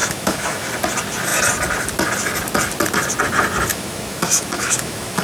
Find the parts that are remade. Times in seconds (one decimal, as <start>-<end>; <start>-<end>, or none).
0.0-0.7; 3.7-5.2